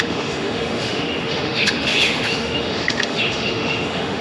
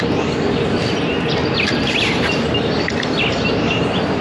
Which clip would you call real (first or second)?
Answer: second